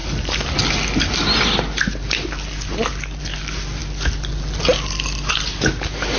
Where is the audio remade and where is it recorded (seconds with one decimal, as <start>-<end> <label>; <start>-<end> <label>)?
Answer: 0.0-6.2 recorded